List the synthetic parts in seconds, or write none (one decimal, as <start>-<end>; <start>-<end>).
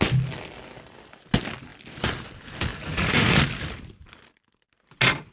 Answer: 2.7-3.4